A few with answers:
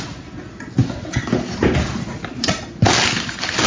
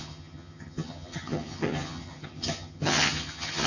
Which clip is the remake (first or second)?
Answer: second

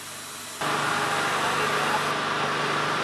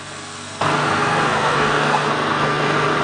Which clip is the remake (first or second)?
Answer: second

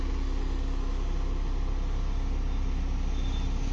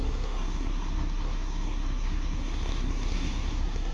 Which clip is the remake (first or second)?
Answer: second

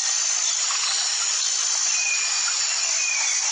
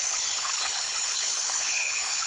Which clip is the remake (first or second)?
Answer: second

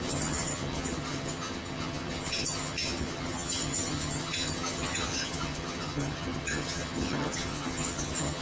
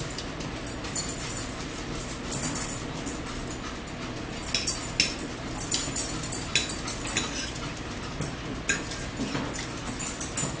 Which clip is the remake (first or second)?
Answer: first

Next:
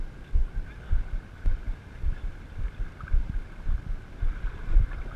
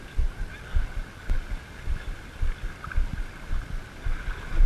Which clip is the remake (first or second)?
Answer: first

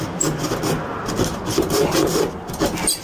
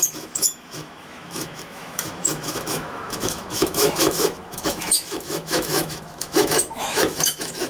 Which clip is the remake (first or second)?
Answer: second